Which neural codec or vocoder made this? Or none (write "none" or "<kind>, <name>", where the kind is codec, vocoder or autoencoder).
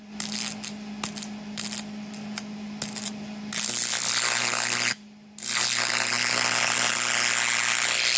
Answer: none